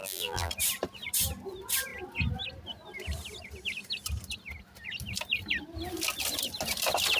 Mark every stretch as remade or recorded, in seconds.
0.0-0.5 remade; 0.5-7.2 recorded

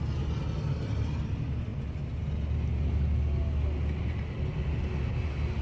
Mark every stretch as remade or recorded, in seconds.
0.0-5.6 recorded

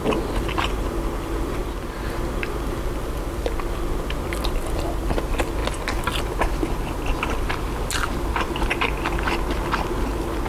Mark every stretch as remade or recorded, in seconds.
0.0-10.5 recorded

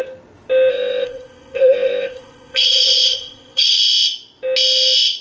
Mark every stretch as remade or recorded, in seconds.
0.0-0.7 recorded; 0.7-3.8 remade; 3.8-5.2 recorded

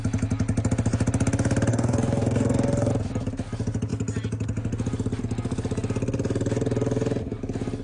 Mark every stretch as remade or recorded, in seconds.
0.0-1.7 recorded; 1.7-2.9 remade; 2.9-7.8 recorded